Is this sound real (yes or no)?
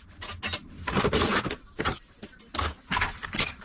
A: yes